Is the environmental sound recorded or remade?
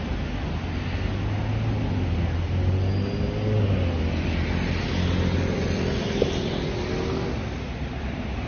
recorded